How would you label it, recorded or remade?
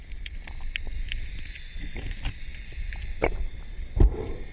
recorded